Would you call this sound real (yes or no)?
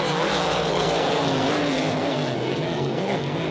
no